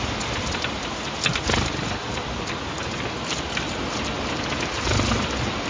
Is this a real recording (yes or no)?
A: yes